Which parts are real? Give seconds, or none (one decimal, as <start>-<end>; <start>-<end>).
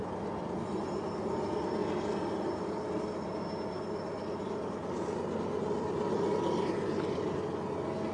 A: 0.0-8.1